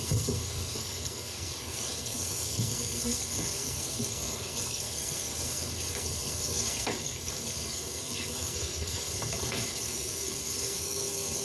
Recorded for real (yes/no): no